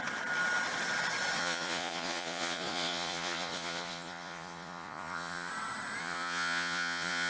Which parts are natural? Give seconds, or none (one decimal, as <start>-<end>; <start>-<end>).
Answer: 0.0-1.4; 5.5-6.0